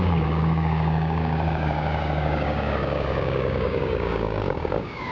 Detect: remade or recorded remade